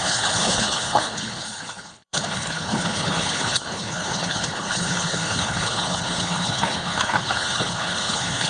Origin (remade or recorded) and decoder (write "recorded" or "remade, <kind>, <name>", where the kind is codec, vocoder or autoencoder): remade, codec, HILCodec